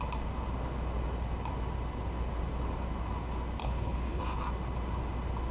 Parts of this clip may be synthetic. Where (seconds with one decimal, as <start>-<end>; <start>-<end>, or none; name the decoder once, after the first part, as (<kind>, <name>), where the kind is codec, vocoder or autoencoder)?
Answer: 3.6-4.2 (codec, HILCodec)